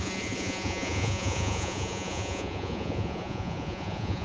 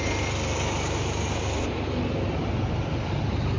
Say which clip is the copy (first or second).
first